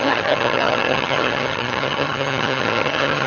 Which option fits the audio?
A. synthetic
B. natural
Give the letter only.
A